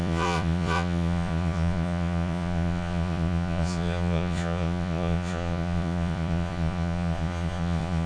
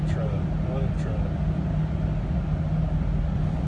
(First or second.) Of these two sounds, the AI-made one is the first